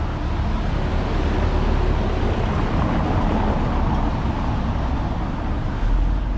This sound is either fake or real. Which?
real